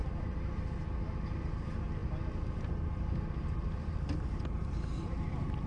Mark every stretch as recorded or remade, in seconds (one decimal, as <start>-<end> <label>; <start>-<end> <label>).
0.0-5.7 recorded